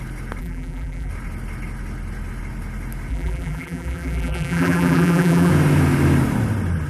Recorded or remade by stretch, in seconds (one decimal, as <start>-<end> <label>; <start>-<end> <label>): 0.0-0.4 recorded; 0.4-1.1 remade; 1.1-3.1 recorded; 3.1-5.5 remade; 5.5-6.9 recorded